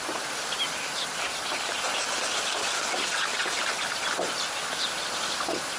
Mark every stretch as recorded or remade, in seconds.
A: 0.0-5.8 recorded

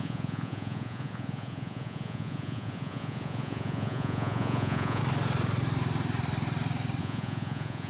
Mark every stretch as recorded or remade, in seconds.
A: 0.0-5.0 remade; 5.0-7.0 recorded; 7.0-7.9 remade

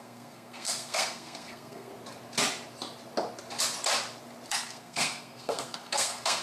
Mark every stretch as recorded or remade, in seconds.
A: 0.0-1.9 remade; 1.9-4.5 recorded; 4.5-6.4 remade

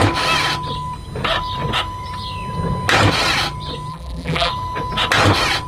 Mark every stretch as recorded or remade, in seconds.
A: 0.0-3.9 recorded; 3.9-4.5 remade; 4.5-5.7 recorded

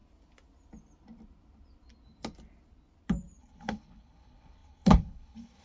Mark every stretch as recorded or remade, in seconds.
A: 0.0-3.4 recorded; 3.4-5.6 remade